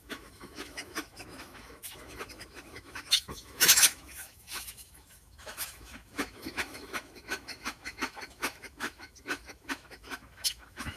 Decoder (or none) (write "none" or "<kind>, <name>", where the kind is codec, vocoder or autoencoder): autoencoder, DAC-VAE